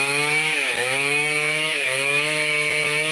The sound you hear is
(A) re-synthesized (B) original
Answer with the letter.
A